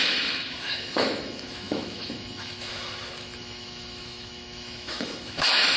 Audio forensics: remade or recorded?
remade